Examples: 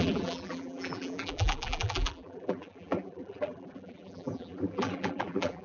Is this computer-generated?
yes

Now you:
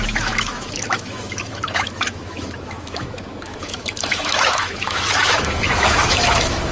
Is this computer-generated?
yes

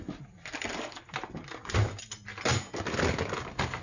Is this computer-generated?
no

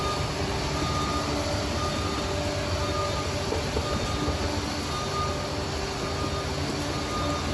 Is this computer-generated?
no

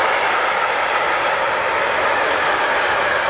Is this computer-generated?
no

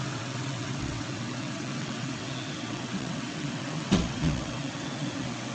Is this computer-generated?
yes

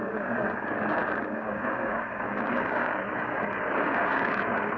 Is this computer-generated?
yes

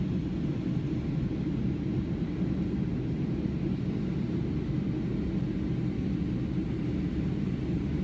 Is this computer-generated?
no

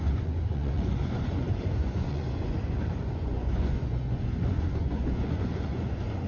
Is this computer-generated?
yes